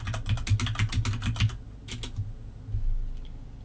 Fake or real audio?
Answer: real